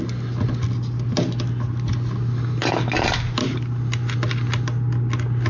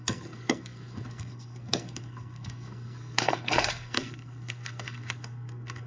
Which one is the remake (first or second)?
second